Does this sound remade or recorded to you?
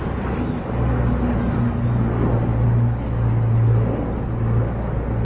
recorded